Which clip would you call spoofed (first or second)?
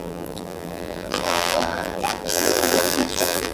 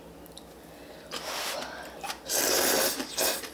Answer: first